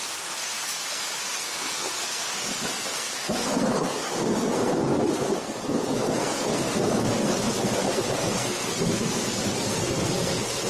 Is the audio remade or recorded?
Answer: remade